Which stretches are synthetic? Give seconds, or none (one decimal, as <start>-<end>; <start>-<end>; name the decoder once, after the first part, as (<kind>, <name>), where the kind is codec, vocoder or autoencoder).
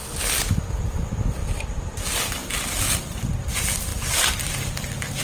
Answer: 1.4-2.0 (vocoder, BigVGAN v2)